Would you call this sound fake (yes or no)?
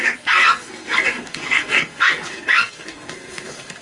yes